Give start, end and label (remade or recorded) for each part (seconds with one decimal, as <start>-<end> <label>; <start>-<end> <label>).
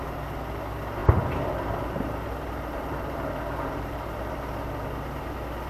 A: 0.0-1.0 recorded; 1.0-4.4 remade; 4.4-5.7 recorded